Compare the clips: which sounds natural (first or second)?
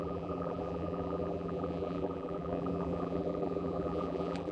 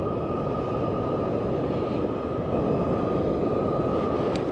second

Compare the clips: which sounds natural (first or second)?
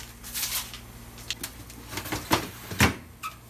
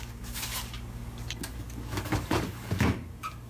first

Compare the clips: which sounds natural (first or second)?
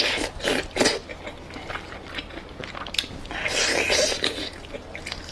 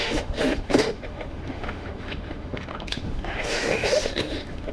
first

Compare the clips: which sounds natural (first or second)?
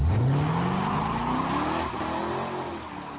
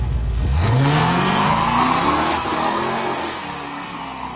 first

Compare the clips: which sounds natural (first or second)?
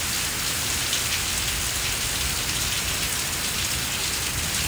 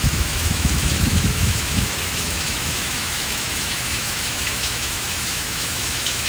first